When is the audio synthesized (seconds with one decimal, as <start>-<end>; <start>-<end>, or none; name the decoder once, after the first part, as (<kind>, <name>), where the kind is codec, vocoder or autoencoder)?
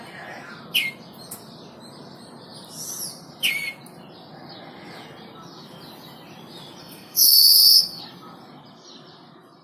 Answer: 6.8-8.0 (codec, SNAC)